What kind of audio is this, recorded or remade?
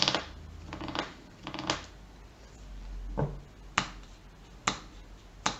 recorded